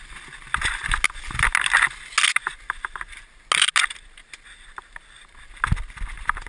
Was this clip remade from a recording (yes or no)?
no